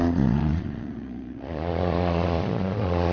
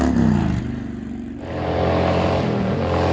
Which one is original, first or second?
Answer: second